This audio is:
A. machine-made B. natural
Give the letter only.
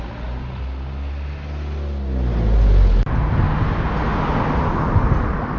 B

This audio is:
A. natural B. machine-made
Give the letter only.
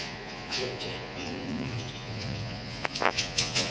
B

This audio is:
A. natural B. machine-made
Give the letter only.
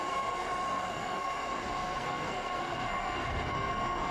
B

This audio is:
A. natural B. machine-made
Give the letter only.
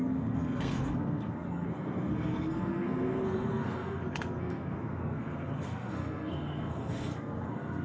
B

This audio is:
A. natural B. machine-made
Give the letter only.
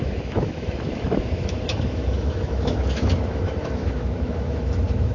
B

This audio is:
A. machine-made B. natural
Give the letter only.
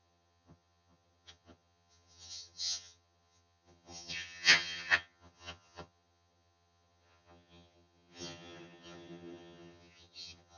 A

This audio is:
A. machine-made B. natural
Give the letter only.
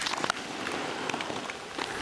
B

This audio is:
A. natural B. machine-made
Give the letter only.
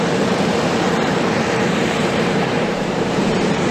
B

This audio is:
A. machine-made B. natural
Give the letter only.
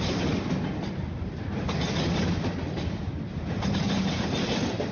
B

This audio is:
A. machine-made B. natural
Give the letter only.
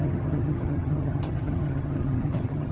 A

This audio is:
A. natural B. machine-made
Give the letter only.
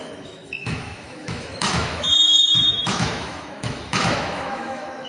B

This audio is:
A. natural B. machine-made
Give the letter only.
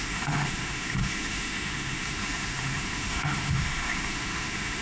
B